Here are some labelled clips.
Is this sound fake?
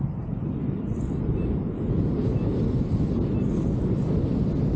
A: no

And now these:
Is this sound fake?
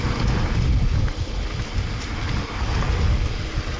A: no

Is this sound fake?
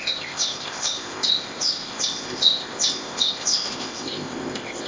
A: yes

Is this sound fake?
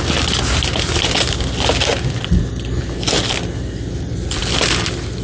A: no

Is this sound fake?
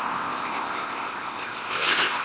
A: yes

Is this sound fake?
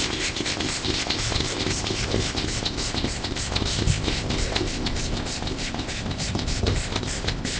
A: yes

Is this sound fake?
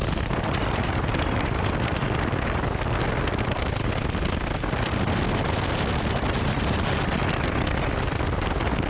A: no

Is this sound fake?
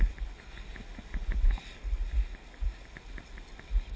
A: no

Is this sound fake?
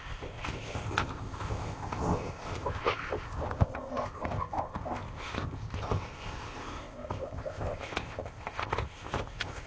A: yes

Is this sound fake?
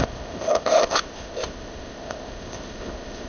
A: yes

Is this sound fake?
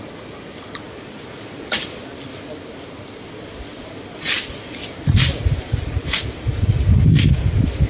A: no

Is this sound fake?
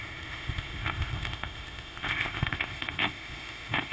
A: yes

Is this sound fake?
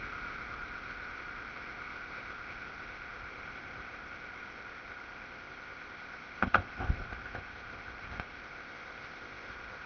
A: yes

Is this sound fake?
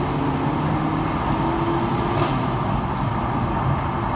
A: no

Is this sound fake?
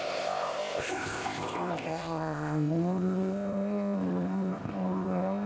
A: yes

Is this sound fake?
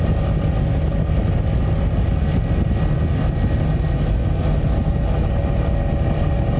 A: no